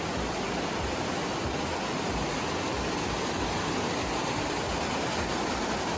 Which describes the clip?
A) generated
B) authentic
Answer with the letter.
B